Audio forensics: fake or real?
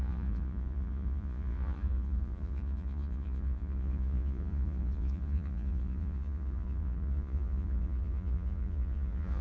fake